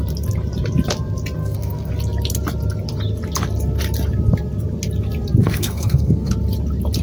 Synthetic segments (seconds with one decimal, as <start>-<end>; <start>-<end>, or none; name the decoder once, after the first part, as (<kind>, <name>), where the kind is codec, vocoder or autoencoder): 1.4-1.9 (codec, SNAC); 5.4-6.3